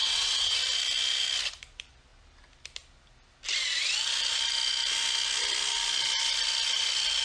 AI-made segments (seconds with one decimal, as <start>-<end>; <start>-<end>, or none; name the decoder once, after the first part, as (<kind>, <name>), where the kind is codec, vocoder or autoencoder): 0.0-0.6 (vocoder, WaveNeXt)